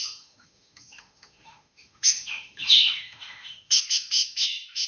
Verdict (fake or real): fake